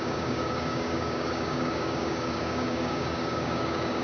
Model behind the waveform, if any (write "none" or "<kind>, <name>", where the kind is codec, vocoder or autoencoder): codec, DAC